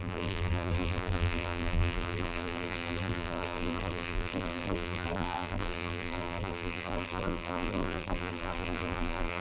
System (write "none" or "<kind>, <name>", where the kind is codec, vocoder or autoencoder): vocoder, BigVGAN v2